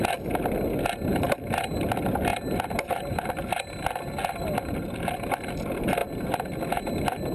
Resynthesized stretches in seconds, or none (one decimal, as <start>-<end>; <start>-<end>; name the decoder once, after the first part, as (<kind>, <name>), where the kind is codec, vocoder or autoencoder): 2.3-3.3 (vocoder, BigVGAN v2)